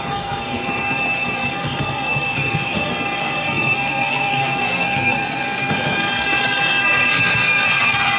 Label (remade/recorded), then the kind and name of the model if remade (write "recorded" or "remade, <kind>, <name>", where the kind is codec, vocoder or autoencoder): remade, codec, SNAC